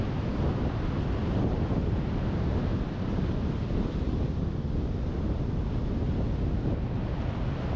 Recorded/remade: recorded